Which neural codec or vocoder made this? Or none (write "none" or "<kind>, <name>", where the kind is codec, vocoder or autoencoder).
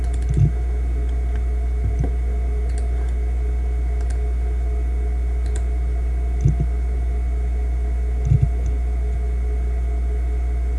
none